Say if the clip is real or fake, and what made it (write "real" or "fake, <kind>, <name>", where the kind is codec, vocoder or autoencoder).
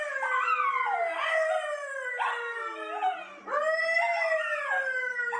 real